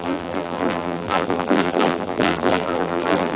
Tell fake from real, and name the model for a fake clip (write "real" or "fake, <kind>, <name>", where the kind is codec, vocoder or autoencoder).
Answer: fake, vocoder, BigVGAN v2